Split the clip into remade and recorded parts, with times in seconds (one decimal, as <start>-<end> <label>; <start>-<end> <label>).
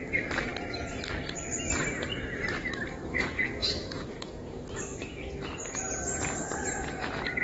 0.0-2.6 recorded; 2.6-5.2 remade; 5.2-7.4 recorded